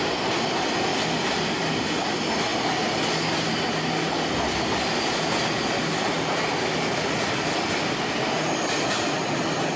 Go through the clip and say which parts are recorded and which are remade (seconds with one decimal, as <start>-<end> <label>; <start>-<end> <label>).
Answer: 0.0-9.8 recorded